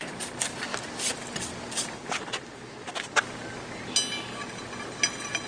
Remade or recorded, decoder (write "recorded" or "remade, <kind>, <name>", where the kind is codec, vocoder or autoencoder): recorded